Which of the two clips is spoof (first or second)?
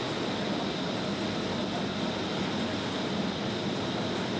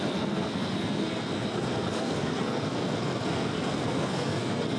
second